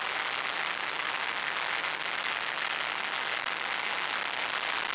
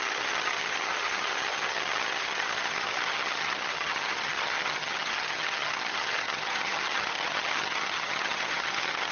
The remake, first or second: second